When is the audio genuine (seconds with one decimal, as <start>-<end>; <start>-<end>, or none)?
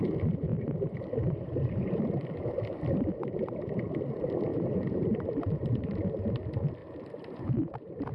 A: 0.0-0.5; 2.5-4.5; 5.5-6.8